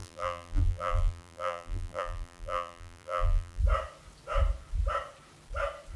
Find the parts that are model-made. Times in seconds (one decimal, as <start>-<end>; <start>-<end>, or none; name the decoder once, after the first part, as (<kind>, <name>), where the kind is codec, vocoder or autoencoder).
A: 0.0-3.6 (vocoder, BigVGAN v2)